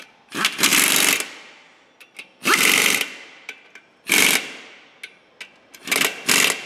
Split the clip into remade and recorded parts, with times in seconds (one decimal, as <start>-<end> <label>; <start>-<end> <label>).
0.0-6.7 recorded